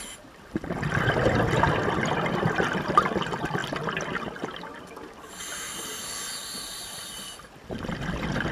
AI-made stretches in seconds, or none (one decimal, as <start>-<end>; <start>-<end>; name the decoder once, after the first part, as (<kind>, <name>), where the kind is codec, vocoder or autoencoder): none